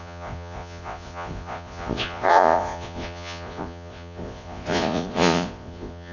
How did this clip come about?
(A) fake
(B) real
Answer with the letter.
A